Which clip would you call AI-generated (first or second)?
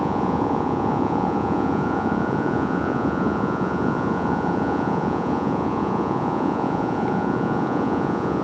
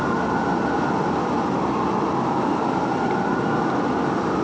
first